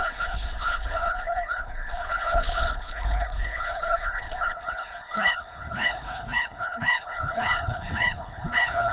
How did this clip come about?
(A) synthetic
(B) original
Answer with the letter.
A